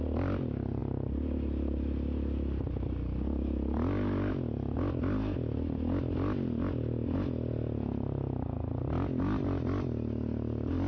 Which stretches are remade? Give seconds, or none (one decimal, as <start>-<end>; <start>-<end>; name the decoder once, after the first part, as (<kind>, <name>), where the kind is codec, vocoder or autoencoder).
none